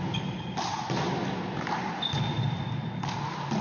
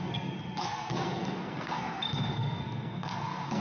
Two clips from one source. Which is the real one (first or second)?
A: first